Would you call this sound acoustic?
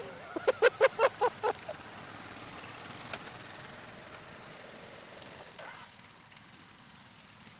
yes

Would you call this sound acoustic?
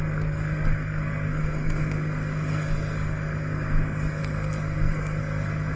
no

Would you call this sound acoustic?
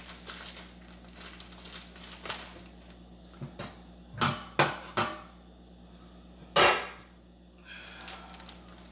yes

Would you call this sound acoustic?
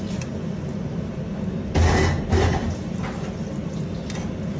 yes